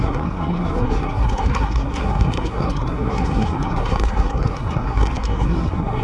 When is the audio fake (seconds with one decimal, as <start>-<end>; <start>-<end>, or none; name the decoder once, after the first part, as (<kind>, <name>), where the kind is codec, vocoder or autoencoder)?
0.0-6.0 (codec, SNAC)

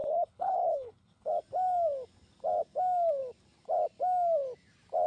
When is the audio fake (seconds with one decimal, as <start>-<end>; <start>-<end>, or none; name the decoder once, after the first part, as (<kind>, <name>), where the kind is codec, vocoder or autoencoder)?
0.0-1.3 (codec, HILCodec)